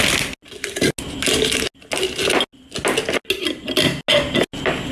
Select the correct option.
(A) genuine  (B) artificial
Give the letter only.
A